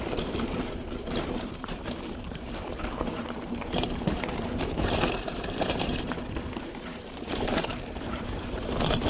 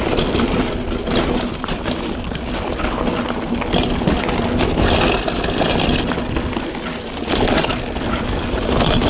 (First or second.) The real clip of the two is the second